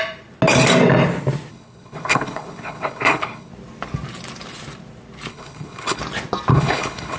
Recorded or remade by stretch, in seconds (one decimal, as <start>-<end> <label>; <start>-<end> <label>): 0.0-1.5 recorded; 1.5-3.5 remade; 3.5-5.3 recorded; 5.3-6.0 remade; 6.0-6.5 recorded; 6.5-7.2 remade